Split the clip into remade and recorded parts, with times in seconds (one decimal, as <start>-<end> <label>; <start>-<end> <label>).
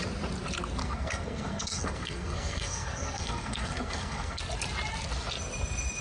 0.0-0.8 recorded; 0.8-4.4 remade; 4.4-6.0 recorded